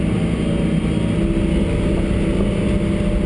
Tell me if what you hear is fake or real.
real